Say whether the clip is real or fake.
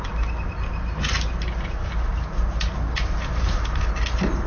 real